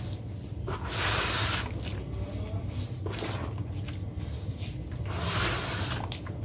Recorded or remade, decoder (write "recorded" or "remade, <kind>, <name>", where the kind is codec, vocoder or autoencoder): recorded